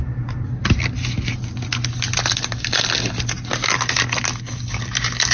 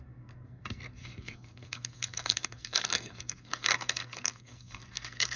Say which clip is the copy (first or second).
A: second